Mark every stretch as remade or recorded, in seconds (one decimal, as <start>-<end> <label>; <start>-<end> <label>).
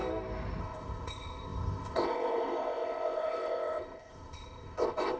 0.0-0.6 recorded; 0.6-5.2 remade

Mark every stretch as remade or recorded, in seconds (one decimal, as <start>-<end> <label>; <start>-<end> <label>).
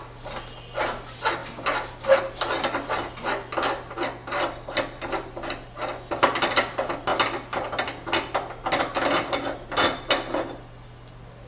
0.0-11.5 recorded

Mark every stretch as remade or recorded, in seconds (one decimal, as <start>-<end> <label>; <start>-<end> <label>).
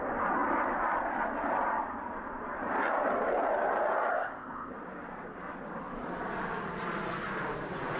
0.0-4.1 recorded; 4.1-4.7 remade; 4.7-8.0 recorded